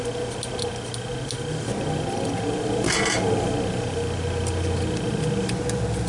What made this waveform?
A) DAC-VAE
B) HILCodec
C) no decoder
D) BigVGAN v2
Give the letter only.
C